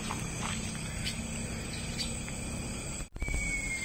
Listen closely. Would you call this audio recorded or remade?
recorded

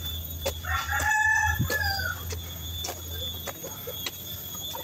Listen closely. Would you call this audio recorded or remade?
recorded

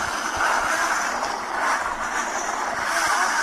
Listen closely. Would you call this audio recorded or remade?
recorded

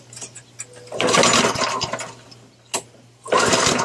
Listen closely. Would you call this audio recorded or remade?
recorded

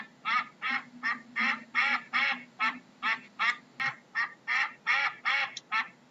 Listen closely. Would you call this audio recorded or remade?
recorded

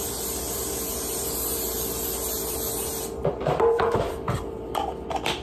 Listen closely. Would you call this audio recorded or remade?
remade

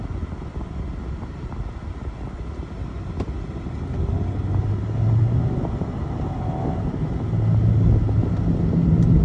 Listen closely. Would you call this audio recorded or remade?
recorded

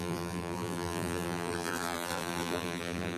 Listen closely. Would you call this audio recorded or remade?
remade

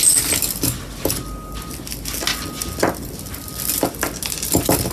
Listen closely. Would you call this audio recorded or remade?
recorded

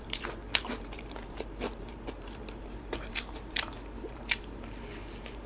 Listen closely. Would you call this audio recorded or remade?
remade